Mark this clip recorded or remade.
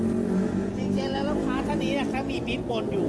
recorded